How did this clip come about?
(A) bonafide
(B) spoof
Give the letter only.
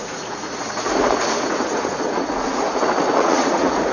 B